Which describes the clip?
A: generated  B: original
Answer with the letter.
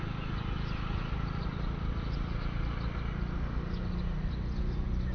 B